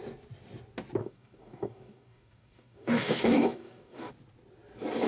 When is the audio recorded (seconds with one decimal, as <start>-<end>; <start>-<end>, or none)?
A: 0.0-1.0; 4.1-5.1